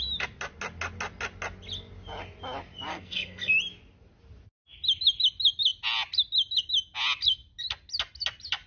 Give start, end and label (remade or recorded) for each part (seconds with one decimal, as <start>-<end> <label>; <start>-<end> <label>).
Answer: 0.0-2.9 recorded; 2.9-3.5 remade; 3.5-8.7 recorded